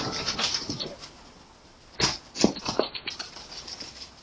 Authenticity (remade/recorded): recorded